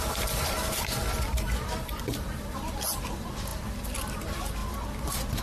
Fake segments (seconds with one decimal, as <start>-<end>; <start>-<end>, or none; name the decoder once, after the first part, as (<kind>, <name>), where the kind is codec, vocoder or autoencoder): 0.0-5.4 (vocoder, BigVGAN v2)